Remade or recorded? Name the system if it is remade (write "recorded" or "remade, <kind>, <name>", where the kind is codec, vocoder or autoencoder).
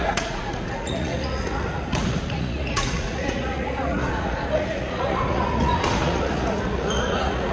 remade, vocoder, Vocos